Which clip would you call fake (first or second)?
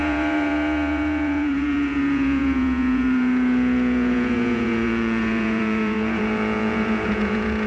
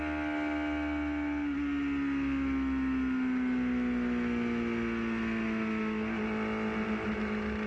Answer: first